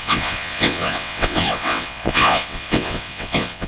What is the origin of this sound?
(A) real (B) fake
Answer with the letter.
B